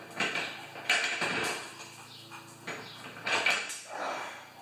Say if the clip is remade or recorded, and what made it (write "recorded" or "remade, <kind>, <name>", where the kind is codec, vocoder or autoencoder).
recorded